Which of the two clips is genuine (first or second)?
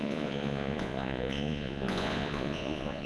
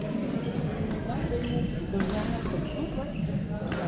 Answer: second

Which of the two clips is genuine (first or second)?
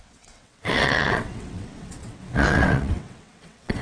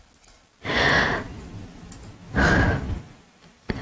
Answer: second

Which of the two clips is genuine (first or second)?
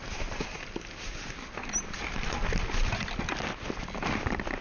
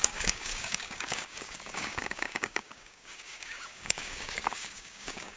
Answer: first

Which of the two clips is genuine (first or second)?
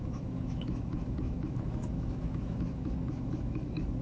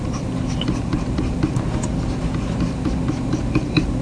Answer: second